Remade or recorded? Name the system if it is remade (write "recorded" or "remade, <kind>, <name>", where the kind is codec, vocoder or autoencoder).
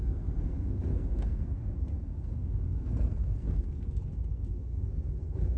remade, codec, SNAC